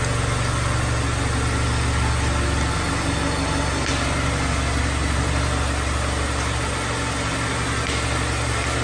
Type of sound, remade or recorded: recorded